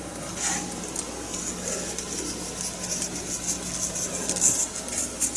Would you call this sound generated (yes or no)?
no